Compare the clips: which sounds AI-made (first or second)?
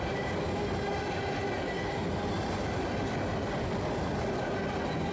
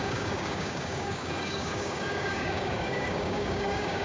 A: second